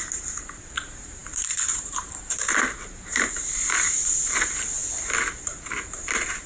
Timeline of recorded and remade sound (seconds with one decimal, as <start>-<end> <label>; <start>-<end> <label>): 0.0-4.8 remade; 4.8-5.4 recorded; 5.4-6.5 remade